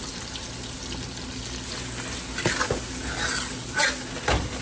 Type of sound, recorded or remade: recorded